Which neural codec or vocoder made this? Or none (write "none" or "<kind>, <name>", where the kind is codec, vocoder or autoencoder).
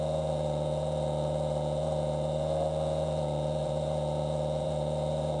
vocoder, Vocos